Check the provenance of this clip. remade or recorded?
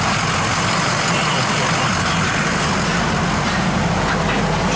recorded